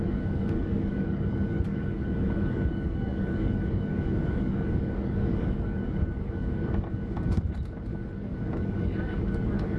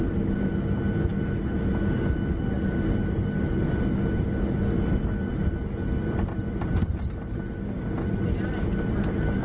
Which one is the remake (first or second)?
first